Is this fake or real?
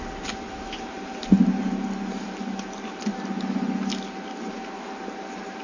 real